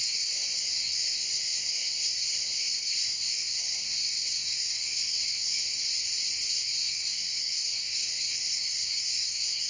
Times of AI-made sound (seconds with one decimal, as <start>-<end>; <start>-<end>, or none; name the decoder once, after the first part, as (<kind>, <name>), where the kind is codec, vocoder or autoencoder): 0.0-5.7 (codec, SNAC); 6.5-9.7